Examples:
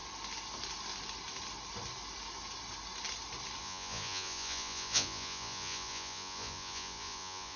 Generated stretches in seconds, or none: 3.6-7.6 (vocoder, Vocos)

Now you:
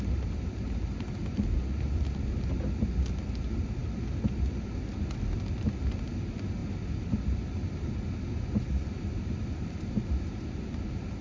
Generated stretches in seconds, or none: none

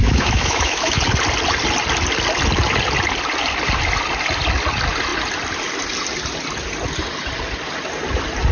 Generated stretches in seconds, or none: 0.0-1.0 (autoencoder, DAC-VAE)

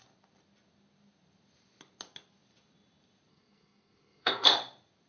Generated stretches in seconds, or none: 3.3-4.5 (codec, SNAC)

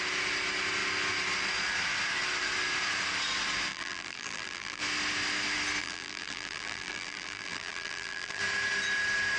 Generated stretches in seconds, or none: 3.7-4.8 (vocoder, BigVGAN v2); 5.8-8.4

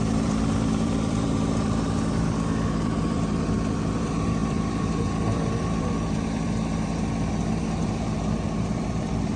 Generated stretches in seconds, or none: 0.0-9.4 (vocoder, BigVGAN v2)

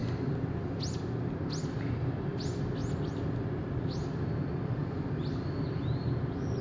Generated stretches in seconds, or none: none